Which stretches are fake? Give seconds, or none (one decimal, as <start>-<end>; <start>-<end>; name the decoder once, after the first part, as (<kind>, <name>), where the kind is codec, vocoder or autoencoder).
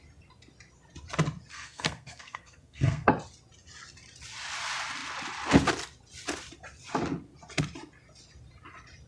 1.5-3.1 (codec, SNAC)